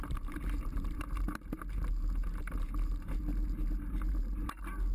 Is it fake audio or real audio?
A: fake